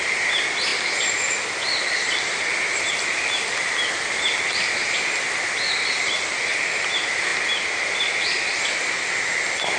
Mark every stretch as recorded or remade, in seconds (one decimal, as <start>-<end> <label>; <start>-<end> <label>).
0.0-9.8 recorded